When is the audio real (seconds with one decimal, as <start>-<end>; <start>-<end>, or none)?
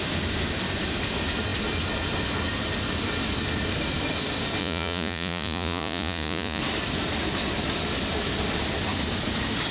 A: 0.0-4.6; 6.6-9.7